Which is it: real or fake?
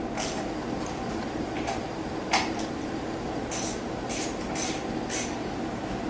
real